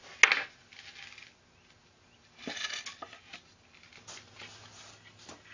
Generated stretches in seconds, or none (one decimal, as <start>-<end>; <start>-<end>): none